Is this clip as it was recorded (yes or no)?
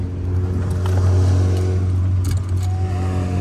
yes